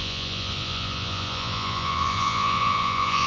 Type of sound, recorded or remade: remade